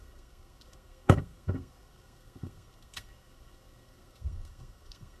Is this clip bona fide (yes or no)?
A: no